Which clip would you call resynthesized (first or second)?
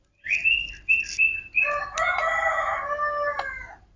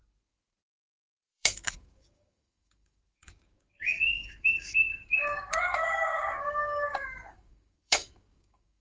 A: second